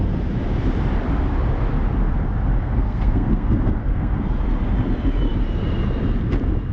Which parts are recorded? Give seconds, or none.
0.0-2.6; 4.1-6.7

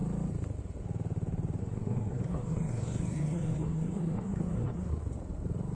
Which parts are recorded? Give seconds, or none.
0.0-1.6; 5.0-5.7

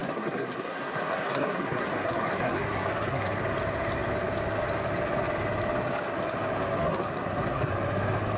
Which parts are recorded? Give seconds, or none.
3.4-6.8; 7.7-8.4

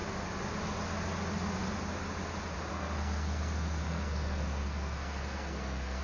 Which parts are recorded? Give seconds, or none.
0.0-2.7

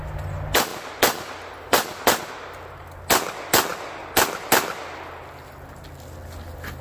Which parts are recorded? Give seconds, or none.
0.0-6.8

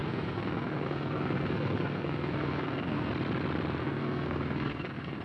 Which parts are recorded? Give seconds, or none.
3.1-3.8

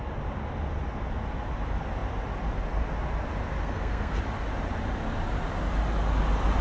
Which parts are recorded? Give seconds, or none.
0.0-3.6; 4.2-6.6

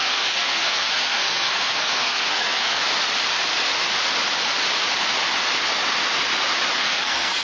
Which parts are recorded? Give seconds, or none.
2.8-6.8